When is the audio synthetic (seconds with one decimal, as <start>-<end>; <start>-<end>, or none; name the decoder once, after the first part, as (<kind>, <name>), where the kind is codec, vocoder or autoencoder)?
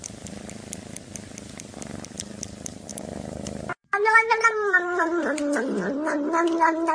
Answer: 2.9-5.6 (vocoder, BigVGAN v2)